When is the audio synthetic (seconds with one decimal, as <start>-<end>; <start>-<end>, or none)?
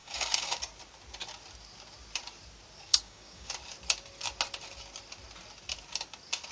0.0-0.6; 2.9-3.5